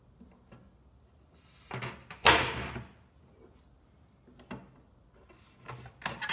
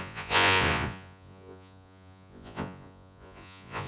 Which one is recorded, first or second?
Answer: first